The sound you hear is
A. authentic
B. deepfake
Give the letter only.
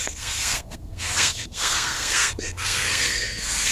B